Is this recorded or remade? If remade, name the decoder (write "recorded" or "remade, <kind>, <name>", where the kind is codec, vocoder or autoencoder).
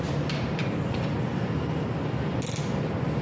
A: recorded